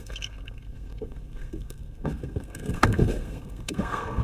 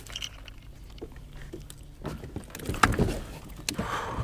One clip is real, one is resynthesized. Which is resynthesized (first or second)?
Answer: first